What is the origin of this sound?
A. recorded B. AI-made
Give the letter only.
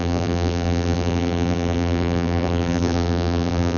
B